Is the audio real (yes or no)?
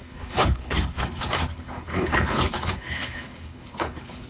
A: no